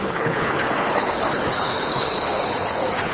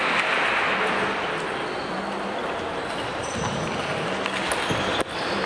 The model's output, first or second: first